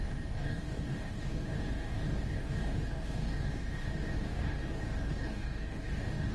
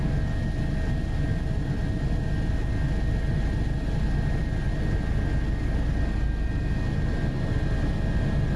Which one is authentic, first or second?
second